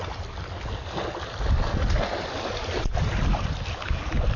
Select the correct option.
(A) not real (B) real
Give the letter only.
B